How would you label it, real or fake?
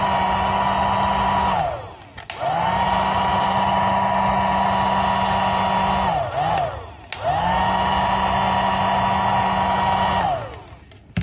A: real